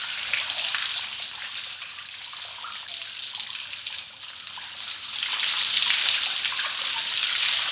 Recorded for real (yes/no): yes